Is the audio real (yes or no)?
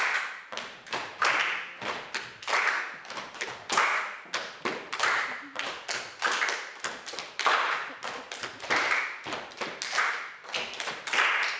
yes